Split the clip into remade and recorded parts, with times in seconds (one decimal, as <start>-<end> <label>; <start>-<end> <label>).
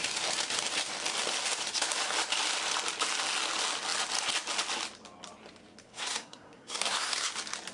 0.0-5.8 recorded; 5.8-7.3 remade; 7.3-7.7 recorded